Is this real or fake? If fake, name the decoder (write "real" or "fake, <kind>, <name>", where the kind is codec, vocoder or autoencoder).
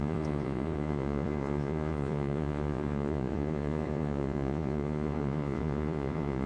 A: fake, vocoder, Vocos